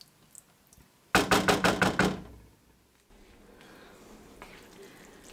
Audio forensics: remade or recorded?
recorded